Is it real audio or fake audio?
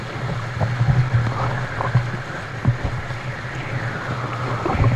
real